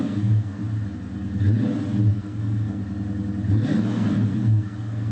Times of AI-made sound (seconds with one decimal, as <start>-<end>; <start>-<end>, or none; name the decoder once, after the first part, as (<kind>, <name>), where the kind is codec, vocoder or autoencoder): 0.0-0.6 (codec, SNAC); 2.1-2.8; 3.5-5.1